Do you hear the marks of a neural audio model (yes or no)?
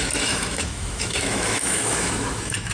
yes